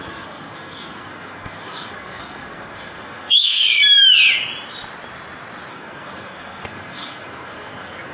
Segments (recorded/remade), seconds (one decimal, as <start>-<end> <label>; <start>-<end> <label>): 0.0-3.6 remade; 3.6-5.7 recorded; 5.7-8.1 remade